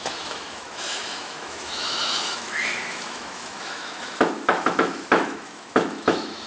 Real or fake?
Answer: fake